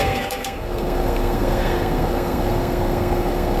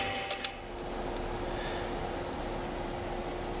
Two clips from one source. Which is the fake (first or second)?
first